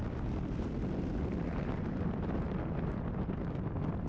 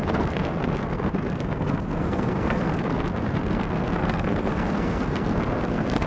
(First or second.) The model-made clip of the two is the second